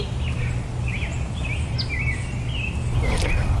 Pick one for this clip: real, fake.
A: real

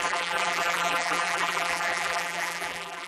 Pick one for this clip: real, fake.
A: fake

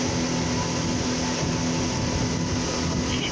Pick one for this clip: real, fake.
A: real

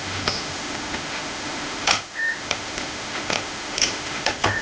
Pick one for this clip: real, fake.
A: fake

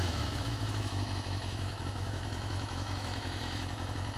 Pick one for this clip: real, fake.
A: fake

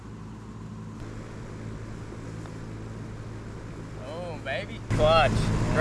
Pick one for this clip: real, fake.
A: real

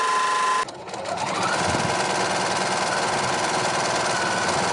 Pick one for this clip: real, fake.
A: real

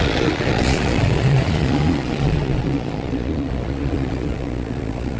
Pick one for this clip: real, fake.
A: fake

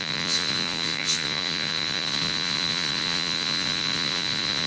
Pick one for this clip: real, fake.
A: fake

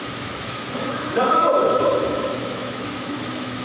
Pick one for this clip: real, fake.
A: fake